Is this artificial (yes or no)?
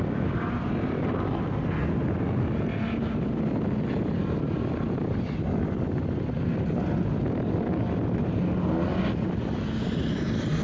no